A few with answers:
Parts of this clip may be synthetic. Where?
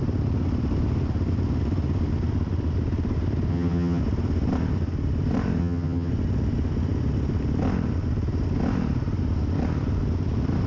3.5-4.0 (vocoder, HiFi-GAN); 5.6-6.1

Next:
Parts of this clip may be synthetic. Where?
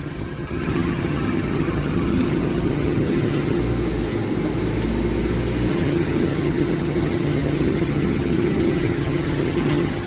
0.0-3.6 (vocoder, HiFi-GAN); 5.7-10.1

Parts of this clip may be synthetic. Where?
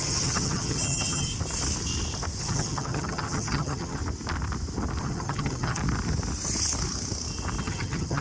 0.0-1.3 (vocoder, HiFi-GAN); 2.4-4.0; 5.0-5.8; 7.6-8.2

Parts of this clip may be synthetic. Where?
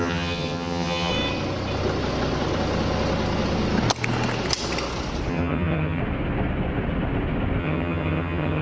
0.0-1.1 (vocoder, HiFi-GAN); 5.3-6.0; 7.6-8.6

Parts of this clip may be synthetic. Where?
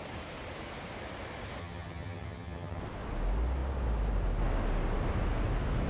1.6-2.8 (vocoder, HiFi-GAN)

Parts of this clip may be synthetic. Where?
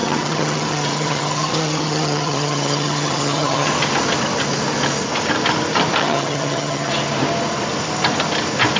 0.0-3.7 (vocoder, HiFi-GAN); 6.0-6.9